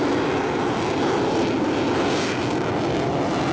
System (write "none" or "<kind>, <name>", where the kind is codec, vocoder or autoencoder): none